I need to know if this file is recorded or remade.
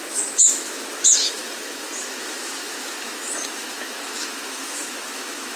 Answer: remade